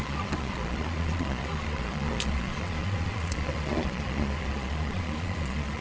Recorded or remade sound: remade